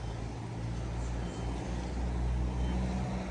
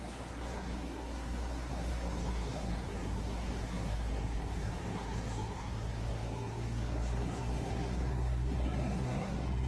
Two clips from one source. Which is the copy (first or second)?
second